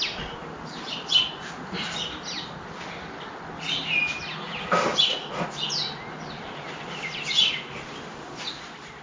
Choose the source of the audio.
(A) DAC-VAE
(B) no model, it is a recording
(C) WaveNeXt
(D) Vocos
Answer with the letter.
B